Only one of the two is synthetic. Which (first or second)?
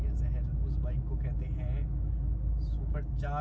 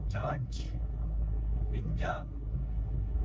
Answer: second